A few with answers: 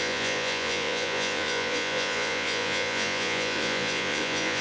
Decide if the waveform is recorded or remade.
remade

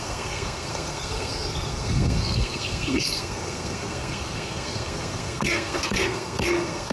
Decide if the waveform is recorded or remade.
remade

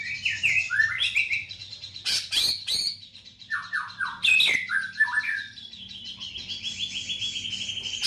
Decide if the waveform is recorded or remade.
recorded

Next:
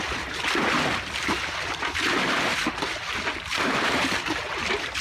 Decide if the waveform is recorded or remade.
recorded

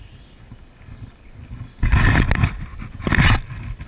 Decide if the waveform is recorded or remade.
recorded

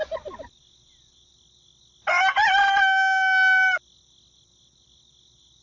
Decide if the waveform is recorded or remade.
recorded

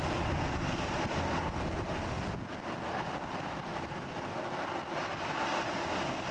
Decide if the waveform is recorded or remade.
recorded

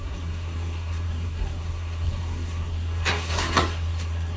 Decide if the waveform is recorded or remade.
remade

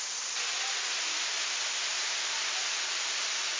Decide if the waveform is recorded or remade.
recorded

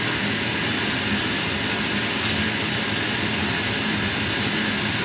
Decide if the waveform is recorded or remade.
recorded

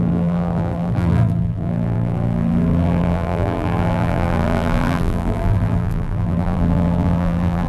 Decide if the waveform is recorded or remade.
remade